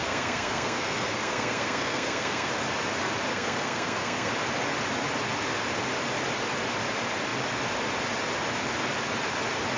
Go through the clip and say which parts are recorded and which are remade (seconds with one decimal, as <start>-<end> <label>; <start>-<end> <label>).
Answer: 0.0-2.5 remade; 2.5-3.3 recorded; 3.3-4.3 remade; 4.3-9.8 recorded